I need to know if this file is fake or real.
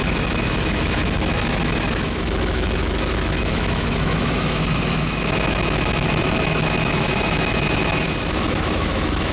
fake